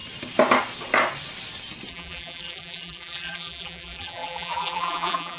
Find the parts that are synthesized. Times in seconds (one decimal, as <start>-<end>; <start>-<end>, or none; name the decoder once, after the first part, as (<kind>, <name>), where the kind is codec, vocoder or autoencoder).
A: 1.9-5.4 (vocoder, BigVGAN v2)

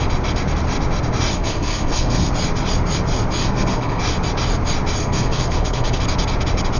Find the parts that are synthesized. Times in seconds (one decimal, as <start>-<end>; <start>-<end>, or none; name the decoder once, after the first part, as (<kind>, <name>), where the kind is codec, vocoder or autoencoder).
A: 1.3-2.3 (codec, SNAC); 3.4-4.0; 5.0-6.0

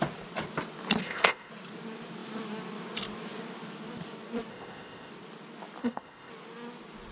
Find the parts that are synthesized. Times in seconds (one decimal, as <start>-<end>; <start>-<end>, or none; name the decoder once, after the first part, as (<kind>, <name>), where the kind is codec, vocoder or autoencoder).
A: 1.0-1.5 (codec, ZipCodec); 4.5-5.1; 5.8-6.3

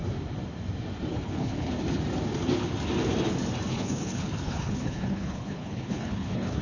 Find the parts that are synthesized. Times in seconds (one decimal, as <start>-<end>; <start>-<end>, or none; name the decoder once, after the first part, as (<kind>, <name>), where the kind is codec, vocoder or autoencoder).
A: 1.1-1.7 (codec, HILCodec); 3.7-6.6

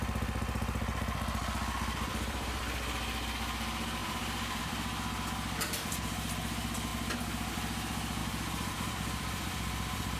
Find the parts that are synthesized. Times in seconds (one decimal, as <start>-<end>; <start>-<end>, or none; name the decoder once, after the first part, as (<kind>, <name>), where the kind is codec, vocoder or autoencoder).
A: 1.4-2.6 (vocoder, BigVGAN v2); 4.0-4.6; 8.2-10.2

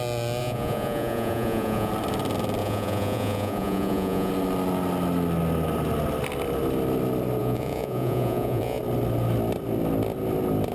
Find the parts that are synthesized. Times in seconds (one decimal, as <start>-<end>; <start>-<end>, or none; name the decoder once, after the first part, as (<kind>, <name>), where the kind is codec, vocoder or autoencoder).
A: 0.4-1.9 (vocoder, Vocos); 2.6-4.3; 7.4-8.8

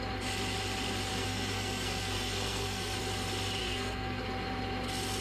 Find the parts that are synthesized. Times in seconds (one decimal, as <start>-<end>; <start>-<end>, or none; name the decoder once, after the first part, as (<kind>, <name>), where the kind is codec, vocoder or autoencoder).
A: 1.1-3.0 (codec, SNAC); 3.6-4.2